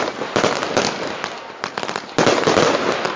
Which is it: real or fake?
real